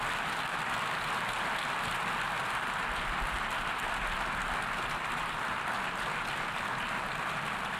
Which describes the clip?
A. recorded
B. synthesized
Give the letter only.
A